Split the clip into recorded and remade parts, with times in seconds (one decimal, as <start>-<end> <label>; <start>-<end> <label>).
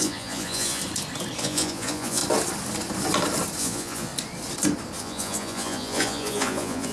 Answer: 0.0-0.8 remade; 0.8-1.4 recorded; 1.4-2.2 remade; 2.2-3.6 recorded; 3.6-4.1 remade; 4.1-5.0 recorded; 5.0-6.9 remade